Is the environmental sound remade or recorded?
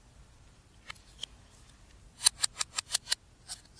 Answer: recorded